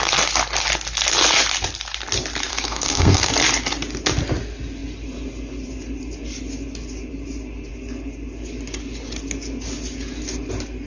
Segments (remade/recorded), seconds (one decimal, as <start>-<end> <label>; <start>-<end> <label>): 0.0-2.5 recorded; 2.5-3.3 remade; 3.3-10.9 recorded